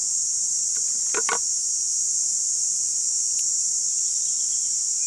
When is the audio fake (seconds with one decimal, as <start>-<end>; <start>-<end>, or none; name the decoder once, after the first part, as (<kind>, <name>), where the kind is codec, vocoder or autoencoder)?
0.0-1.6 (vocoder, BigVGAN v2)